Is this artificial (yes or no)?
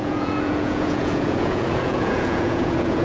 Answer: yes